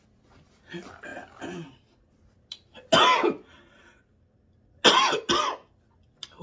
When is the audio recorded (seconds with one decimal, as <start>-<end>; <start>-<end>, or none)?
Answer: 0.0-6.4